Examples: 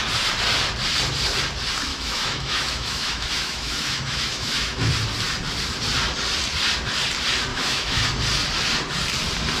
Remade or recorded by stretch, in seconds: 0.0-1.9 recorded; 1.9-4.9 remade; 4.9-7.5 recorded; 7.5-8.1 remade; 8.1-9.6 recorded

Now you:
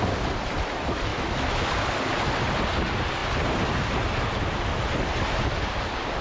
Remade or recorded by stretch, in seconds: 0.0-1.1 recorded; 1.1-1.7 remade; 1.7-6.2 recorded

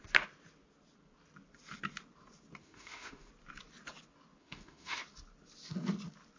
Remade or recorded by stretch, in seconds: 0.0-2.6 recorded; 2.6-3.3 remade; 3.3-4.4 recorded; 4.4-5.0 remade; 5.0-6.4 recorded

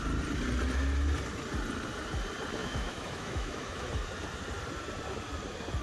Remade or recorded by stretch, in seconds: 0.0-2.6 recorded; 2.6-3.9 remade; 3.9-5.8 recorded